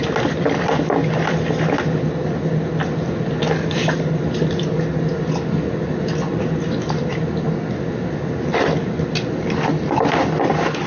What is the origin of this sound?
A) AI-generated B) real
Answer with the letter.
B